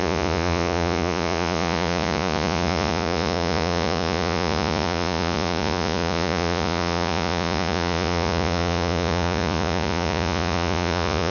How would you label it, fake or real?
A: fake